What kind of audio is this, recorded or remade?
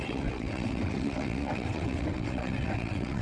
remade